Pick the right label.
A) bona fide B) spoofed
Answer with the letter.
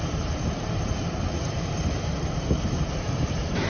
B